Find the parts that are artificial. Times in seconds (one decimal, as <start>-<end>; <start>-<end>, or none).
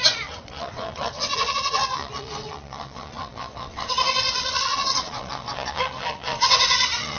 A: 0.0-7.2